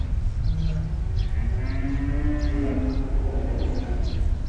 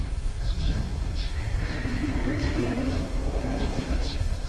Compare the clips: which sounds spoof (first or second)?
second